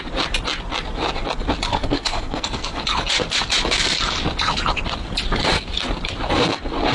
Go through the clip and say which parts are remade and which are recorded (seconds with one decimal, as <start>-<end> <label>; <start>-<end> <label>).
0.0-1.7 recorded; 1.7-2.8 remade; 2.8-6.9 recorded